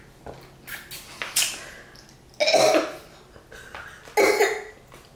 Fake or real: real